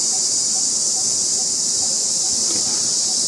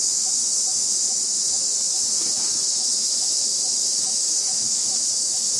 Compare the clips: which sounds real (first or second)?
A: first